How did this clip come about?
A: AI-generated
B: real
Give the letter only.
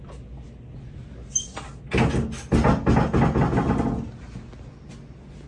B